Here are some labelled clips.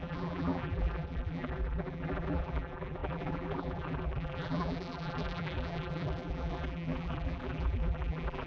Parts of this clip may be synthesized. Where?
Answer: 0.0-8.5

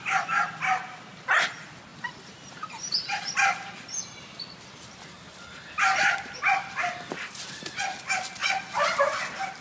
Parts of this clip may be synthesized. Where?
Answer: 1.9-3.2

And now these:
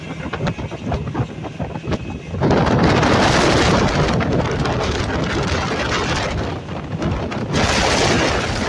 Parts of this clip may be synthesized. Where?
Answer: none

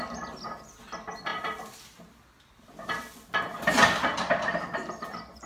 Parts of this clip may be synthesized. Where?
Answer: 1.3-4.6